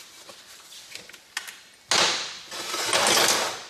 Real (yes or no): yes